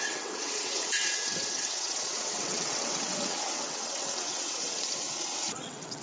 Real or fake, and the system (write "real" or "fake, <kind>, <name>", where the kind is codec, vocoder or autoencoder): fake, vocoder, WaveNeXt